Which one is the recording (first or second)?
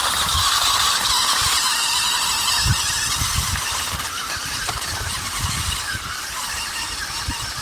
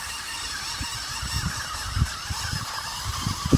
first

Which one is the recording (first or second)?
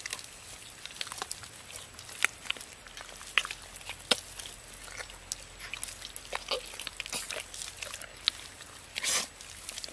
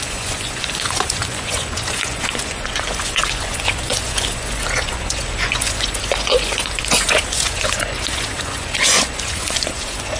first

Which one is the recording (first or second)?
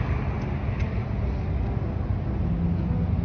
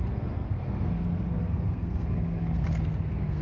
first